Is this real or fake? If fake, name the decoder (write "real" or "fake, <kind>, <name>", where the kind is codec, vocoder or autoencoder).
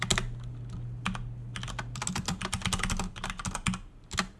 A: real